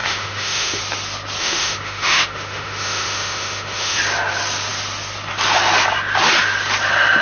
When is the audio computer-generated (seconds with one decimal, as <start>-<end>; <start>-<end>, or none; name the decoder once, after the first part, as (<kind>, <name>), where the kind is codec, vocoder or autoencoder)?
0.0-0.8 (autoencoder, DAC-VAE); 1.4-4.0